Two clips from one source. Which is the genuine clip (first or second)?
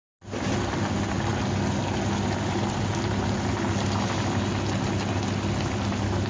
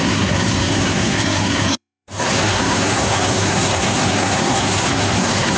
first